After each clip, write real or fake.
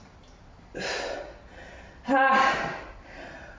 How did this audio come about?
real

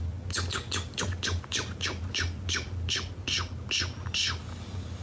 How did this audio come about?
real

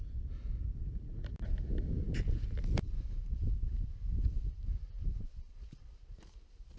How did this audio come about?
real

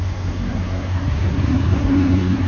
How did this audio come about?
fake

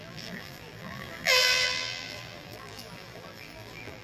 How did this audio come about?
fake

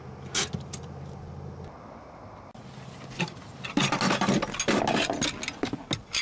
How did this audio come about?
real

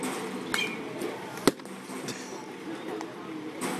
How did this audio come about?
real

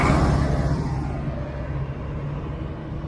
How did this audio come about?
real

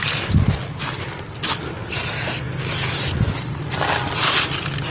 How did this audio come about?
real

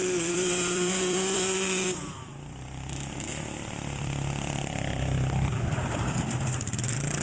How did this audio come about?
fake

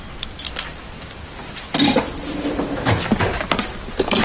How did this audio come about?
real